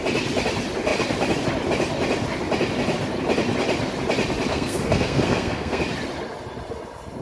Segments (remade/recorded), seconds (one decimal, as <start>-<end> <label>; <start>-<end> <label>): 0.0-4.5 recorded; 4.5-5.8 remade; 5.8-7.2 recorded